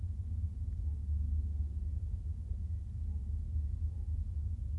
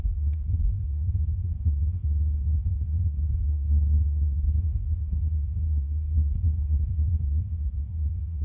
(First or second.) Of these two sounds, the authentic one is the first